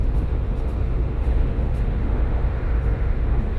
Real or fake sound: fake